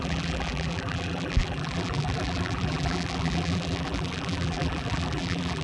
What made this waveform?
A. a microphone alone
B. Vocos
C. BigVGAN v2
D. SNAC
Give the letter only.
C